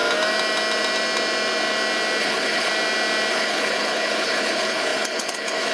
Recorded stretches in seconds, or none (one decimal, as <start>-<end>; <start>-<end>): 0.0-2.2; 2.7-3.3